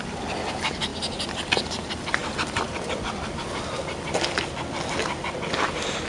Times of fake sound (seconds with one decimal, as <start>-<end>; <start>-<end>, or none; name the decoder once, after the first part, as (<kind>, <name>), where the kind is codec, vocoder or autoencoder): none

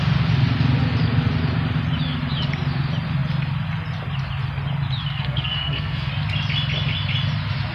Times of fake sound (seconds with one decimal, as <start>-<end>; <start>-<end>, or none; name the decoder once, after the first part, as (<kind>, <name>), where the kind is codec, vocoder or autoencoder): 5.1-6.1 (codec, SNAC)

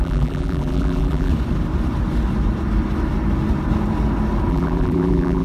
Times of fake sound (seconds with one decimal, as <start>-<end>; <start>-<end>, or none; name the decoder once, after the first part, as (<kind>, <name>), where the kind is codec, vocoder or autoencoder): 0.0-1.3 (vocoder, BigVGAN v2); 4.5-5.4

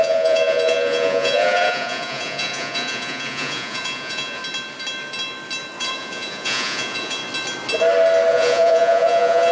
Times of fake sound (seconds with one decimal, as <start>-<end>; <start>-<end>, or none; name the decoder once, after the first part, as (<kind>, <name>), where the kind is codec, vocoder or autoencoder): 0.0-4.4 (vocoder, Vocos); 5.8-7.2; 8.3-9.5

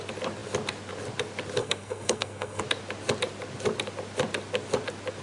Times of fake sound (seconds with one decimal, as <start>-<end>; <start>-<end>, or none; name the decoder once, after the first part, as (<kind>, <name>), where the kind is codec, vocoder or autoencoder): 1.6-2.6 (codec, SNAC)

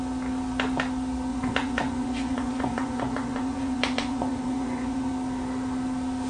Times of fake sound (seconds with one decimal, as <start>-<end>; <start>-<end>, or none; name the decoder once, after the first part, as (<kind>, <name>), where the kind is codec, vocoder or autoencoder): 1.3-5.1 (vocoder, Vocos)